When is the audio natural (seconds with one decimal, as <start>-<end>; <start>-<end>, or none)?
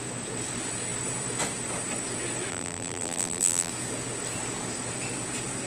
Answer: 0.0-2.5; 3.7-5.7